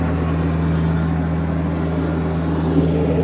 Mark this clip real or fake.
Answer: real